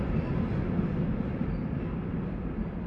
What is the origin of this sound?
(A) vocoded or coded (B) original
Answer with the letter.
B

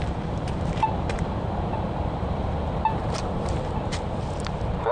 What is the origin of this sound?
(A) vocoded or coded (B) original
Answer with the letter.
A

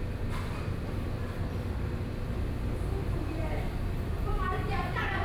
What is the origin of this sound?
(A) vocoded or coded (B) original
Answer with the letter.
A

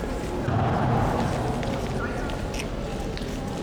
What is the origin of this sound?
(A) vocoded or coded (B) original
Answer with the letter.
B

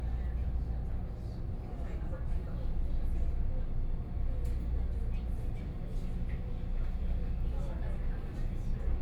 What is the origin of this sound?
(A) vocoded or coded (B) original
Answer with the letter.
B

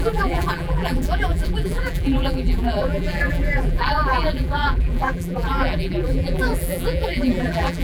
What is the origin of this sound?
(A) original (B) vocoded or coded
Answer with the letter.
B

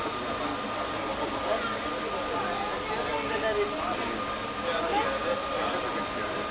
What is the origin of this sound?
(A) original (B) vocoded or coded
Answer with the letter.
A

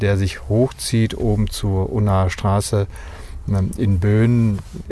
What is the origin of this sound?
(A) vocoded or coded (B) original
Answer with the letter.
B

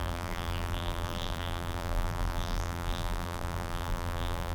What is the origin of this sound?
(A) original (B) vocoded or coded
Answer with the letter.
B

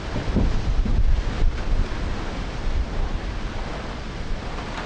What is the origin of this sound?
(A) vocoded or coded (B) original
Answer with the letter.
A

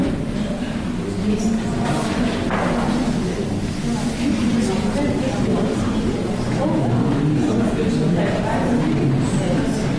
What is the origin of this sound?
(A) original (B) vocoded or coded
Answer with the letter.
A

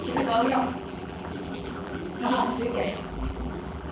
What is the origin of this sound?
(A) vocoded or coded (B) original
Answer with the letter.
A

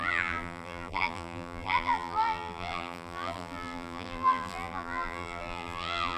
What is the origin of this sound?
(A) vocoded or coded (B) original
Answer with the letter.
A